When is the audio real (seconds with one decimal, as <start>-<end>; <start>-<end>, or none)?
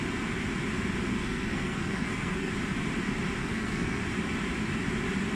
0.0-1.1; 2.5-3.4; 4.0-5.3